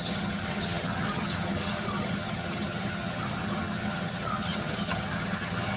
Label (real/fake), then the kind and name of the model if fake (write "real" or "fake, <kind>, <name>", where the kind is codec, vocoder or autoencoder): fake, vocoder, HiFi-GAN